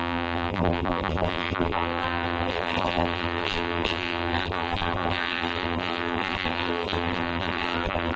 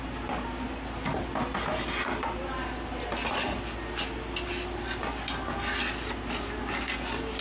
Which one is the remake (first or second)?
first